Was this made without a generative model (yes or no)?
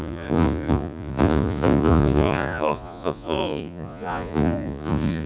no